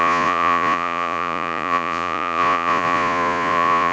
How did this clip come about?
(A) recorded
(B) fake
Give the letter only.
B